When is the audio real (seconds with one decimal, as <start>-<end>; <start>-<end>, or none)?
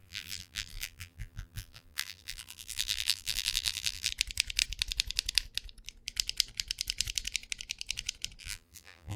4.1-8.4